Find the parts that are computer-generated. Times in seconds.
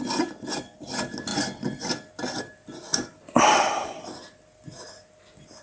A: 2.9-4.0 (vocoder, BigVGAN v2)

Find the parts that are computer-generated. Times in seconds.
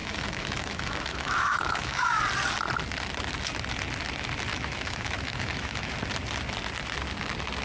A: 0.0-2.2 (autoencoder, DAC-VAE); 4.5-5.9